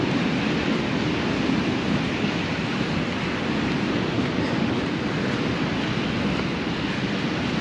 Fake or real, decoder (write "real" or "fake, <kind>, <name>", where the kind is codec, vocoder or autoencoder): real